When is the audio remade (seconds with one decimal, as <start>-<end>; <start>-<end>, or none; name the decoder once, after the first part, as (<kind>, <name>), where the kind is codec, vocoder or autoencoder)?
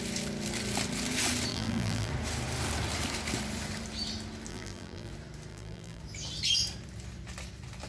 1.5-2.1 (vocoder, BigVGAN v2); 4.5-5.1; 5.5-6.0